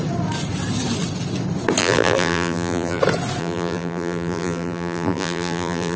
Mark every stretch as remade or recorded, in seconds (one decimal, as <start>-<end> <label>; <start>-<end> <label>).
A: 0.0-1.8 recorded; 1.8-3.0 remade; 3.0-3.4 recorded; 3.4-6.0 remade